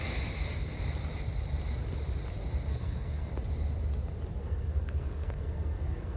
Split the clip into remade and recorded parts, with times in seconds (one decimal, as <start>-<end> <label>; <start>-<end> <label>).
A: 0.0-2.7 recorded; 2.7-3.3 remade; 3.3-4.4 recorded; 4.4-6.2 remade